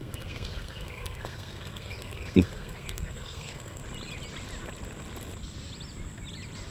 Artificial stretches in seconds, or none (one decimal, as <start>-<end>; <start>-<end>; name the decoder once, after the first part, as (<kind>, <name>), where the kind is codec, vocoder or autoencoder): 0.0-3.8 (codec, SNAC)